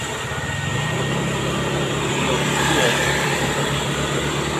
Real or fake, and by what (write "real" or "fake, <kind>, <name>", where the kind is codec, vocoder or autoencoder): fake, vocoder, BigVGAN v2